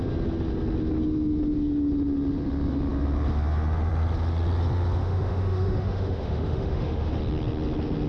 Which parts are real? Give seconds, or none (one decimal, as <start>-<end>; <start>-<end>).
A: 0.0-5.0; 7.1-8.1